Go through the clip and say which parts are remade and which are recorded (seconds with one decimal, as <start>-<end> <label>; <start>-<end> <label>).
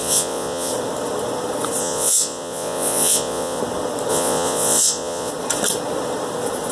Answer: 0.0-0.7 remade; 0.7-1.8 recorded; 1.8-3.6 remade; 3.6-4.1 recorded; 4.1-5.3 remade; 5.3-6.7 recorded